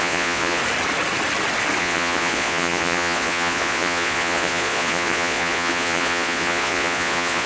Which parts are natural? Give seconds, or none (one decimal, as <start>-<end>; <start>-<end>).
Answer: 0.6-1.8